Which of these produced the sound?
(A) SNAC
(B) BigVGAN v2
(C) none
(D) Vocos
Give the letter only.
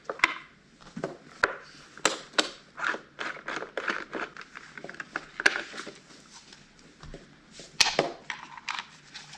C